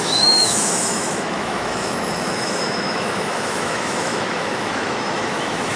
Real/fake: fake